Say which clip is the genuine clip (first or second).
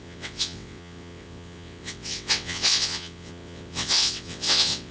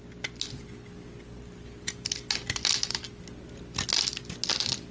second